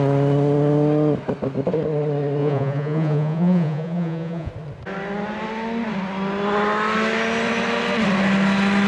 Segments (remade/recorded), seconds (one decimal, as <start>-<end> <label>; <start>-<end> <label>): 0.0-2.4 recorded; 2.4-4.5 remade; 4.5-8.9 recorded